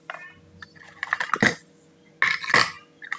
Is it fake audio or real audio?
real